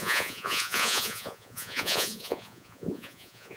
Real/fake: fake